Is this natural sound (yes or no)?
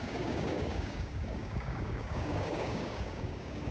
no